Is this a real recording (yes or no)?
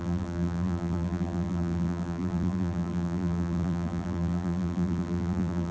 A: no